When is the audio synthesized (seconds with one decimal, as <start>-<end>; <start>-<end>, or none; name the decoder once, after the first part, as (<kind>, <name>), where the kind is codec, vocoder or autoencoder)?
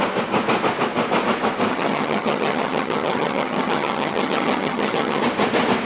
1.7-5.2 (vocoder, HiFi-GAN)